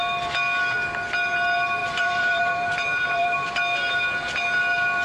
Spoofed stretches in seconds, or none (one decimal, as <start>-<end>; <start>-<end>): 1.8-3.5